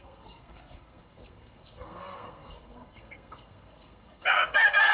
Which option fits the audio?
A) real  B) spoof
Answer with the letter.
B